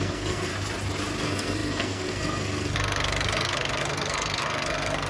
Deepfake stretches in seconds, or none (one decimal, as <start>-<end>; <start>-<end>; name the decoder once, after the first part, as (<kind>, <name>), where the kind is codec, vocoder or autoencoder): 0.0-0.5 (codec, SNAC); 1.2-5.1